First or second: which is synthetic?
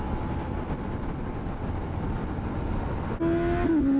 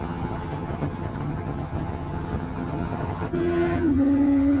second